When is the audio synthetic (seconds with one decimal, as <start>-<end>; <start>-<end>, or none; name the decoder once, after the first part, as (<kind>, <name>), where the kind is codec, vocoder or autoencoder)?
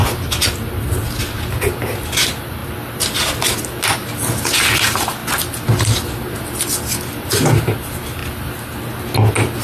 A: 1.8-2.6 (vocoder, BigVGAN v2); 4.8-5.2; 7.2-8.2